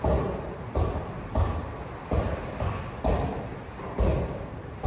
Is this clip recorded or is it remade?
recorded